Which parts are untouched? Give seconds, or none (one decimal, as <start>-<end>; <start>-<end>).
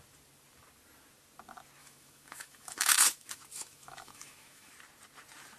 0.0-1.8; 4.7-5.6